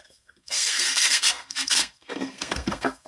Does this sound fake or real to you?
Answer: fake